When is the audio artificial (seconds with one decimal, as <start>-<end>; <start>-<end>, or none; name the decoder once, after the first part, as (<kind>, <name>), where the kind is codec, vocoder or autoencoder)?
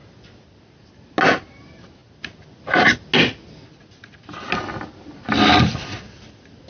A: none